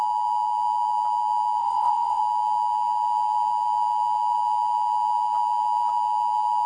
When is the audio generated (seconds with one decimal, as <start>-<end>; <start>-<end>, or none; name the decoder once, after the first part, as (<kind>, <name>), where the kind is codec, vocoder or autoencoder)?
1.6-2.2 (vocoder, WaveNeXt)